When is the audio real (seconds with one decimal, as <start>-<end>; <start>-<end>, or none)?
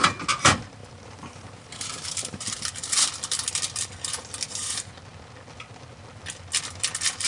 0.0-0.8; 2.7-7.3